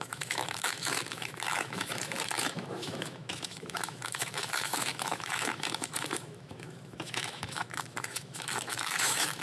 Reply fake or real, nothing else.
fake